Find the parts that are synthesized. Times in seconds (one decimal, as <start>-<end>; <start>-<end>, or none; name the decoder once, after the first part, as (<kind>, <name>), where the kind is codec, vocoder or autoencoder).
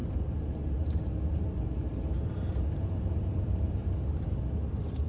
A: 3.8-4.5 (vocoder, BigVGAN v2)